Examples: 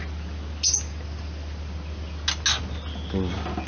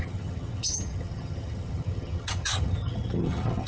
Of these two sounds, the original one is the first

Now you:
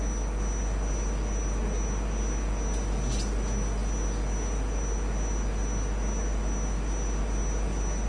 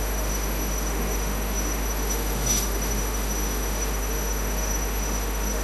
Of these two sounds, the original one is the first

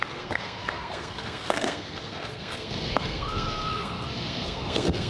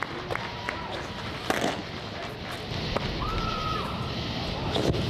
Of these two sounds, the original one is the second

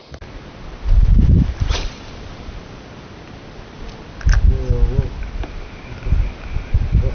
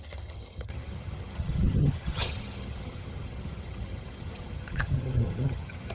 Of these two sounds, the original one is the first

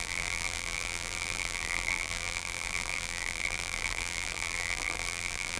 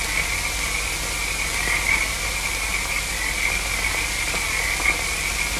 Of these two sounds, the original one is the second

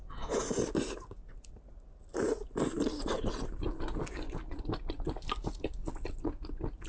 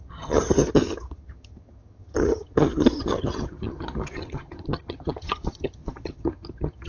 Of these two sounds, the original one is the first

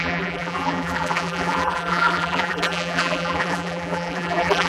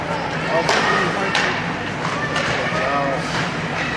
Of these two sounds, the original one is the second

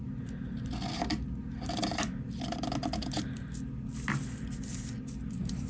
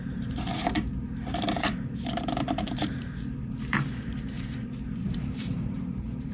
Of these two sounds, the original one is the first